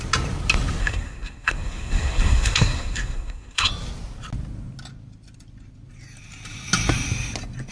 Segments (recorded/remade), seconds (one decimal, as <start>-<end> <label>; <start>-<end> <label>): 0.0-0.8 recorded; 0.8-3.7 remade; 3.7-7.7 recorded